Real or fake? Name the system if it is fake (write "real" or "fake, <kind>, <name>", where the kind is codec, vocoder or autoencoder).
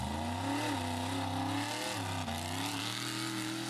real